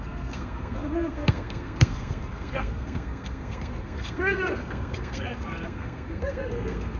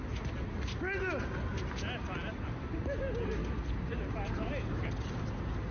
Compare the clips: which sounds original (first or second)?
second